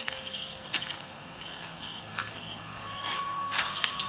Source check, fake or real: fake